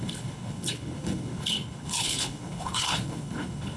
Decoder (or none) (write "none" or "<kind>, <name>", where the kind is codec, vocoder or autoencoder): codec, HILCodec